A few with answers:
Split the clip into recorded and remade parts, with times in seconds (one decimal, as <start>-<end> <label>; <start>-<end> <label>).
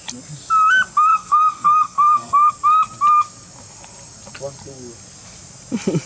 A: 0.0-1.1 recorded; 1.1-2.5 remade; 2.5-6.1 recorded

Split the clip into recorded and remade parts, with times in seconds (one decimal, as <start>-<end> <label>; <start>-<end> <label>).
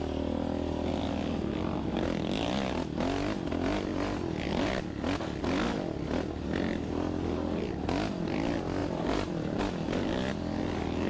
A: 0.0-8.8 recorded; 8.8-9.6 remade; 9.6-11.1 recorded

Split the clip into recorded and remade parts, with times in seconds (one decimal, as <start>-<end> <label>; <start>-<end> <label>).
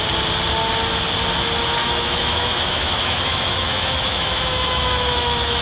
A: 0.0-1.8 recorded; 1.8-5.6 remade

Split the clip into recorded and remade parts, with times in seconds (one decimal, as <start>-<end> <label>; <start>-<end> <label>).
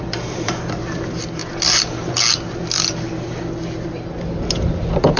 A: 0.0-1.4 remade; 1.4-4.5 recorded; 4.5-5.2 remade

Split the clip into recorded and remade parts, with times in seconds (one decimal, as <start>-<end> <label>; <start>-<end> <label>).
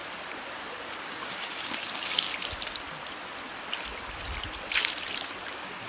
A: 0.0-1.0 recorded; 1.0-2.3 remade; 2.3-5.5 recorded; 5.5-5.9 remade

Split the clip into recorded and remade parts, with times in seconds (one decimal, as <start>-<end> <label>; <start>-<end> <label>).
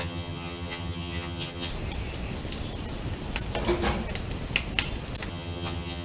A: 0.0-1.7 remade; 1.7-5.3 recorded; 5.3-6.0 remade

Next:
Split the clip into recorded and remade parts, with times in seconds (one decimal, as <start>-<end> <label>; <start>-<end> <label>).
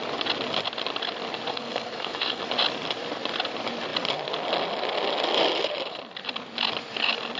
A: 0.0-1.5 recorded; 1.5-2.4 remade; 2.4-7.4 recorded